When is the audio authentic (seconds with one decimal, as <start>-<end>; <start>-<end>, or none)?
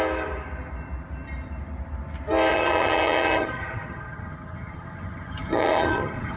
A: 0.0-2.5